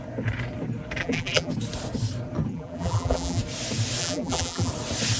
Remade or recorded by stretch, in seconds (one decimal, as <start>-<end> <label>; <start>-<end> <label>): 0.0-1.0 recorded; 1.0-1.5 remade; 1.5-2.5 recorded; 2.5-3.4 remade; 3.4-4.0 recorded; 4.0-4.7 remade; 4.7-5.2 recorded